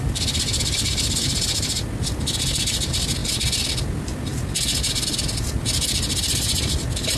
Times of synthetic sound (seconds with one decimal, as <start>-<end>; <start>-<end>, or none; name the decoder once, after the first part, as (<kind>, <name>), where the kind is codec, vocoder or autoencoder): none